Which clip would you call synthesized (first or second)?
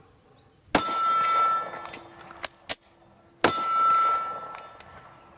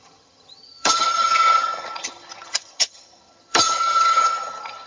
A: second